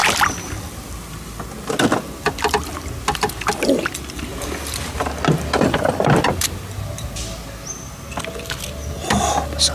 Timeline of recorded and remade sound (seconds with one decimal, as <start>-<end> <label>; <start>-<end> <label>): 0.0-9.7 recorded